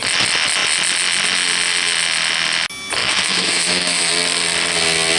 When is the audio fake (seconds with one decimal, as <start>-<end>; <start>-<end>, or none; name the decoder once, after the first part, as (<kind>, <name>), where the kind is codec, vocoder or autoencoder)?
3.0-4.1 (autoencoder, DAC-VAE)

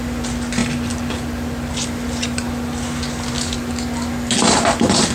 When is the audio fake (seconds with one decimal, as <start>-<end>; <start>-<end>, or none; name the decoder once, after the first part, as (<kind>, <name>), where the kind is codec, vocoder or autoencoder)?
none

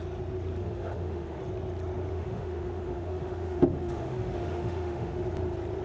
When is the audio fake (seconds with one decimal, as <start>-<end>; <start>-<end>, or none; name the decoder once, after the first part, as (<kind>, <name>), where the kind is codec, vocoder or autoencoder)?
0.6-1.4 (autoencoder, DAC-VAE); 2.1-5.2

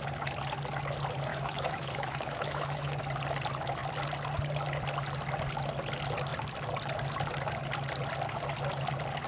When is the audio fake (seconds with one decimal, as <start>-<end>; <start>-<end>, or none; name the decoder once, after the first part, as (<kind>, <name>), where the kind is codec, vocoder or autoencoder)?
1.3-3.0 (autoencoder, DAC-VAE)